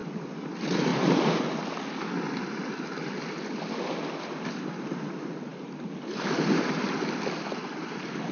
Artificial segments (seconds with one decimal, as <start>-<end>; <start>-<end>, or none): none